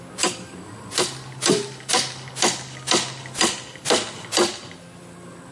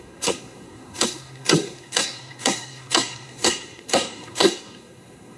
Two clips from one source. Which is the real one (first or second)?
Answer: first